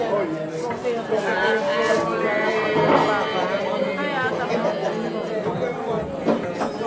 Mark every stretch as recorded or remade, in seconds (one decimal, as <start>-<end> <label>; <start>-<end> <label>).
0.0-6.9 recorded